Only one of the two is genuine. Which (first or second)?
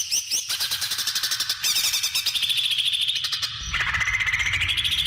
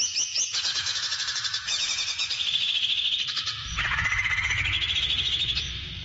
first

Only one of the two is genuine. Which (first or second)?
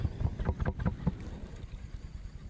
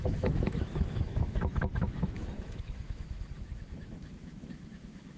first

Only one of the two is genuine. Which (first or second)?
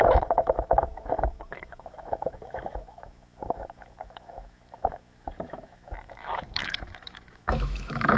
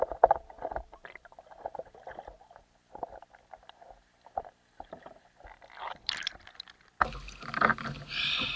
second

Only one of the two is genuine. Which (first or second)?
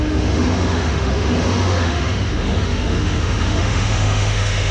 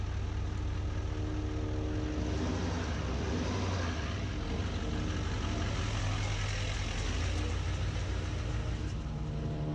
second